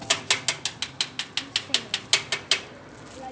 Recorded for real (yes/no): yes